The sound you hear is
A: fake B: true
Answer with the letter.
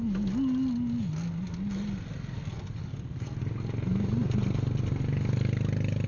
B